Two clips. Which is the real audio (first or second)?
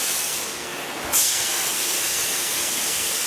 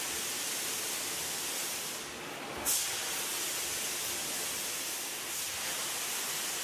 second